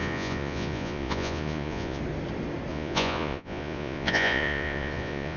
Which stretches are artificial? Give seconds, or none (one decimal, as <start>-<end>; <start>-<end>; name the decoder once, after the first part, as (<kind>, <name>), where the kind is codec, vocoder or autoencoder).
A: 0.0-2.0 (vocoder, Vocos); 2.7-5.4